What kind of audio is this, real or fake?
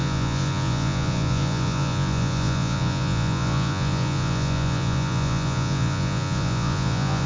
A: fake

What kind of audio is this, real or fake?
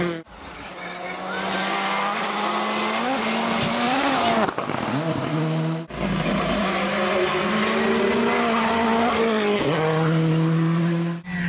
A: real